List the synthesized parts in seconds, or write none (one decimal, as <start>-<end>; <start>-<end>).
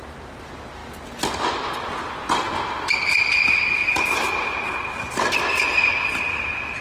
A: none